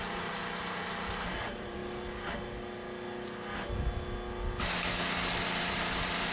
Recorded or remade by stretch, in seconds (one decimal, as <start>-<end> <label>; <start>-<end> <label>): 0.0-1.8 remade; 1.8-5.6 recorded; 5.6-6.3 remade